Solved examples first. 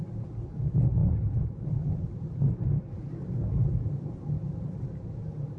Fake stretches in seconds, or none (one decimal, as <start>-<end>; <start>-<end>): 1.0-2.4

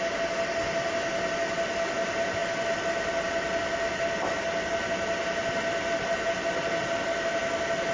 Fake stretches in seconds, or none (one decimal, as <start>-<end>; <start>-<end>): none

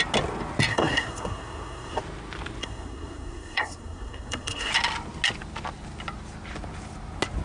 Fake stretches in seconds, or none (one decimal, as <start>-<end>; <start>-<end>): 0.7-2.0; 2.6-4.7

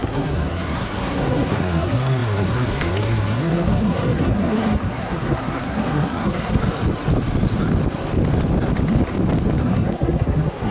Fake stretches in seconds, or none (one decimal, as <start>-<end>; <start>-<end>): 0.0-6.6; 9.6-10.7

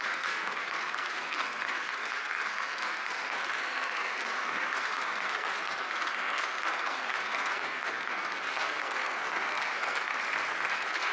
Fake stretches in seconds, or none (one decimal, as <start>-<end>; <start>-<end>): 0.0-10.1; 10.7-11.1